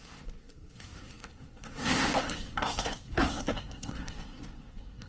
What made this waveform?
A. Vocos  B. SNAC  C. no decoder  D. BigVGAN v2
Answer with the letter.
B